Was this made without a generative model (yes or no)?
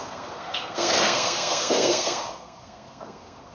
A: no